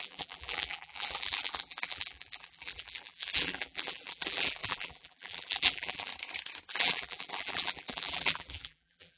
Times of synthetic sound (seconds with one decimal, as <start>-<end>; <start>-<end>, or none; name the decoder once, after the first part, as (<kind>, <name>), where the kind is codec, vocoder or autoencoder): 0.0-6.1 (vocoder, BigVGAN v2); 6.7-9.2